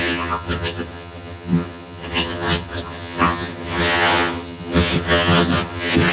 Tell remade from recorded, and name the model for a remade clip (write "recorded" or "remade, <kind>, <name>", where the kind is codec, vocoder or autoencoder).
remade, vocoder, HiFi-GAN